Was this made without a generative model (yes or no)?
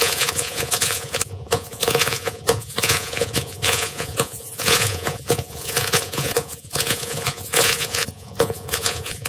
no